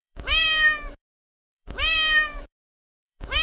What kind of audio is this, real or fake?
fake